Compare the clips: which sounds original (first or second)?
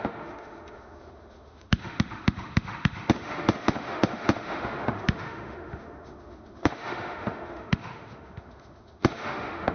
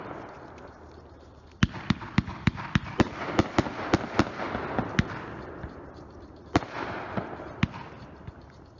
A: second